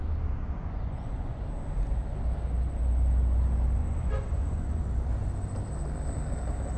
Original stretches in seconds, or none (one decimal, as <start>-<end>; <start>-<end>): 0.0-0.6; 1.4-3.8; 4.8-6.8